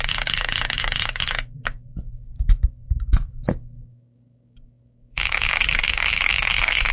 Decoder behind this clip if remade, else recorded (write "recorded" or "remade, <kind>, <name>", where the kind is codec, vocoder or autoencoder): remade, codec, DAC